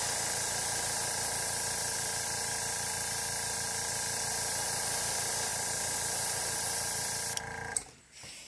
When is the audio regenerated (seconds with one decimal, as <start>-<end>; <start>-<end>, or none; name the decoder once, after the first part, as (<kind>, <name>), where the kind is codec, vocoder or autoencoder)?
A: none